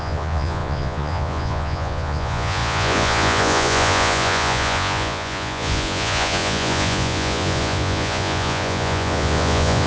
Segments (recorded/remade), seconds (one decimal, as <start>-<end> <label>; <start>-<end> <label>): 0.0-9.9 remade